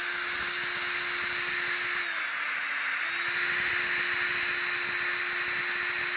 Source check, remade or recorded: recorded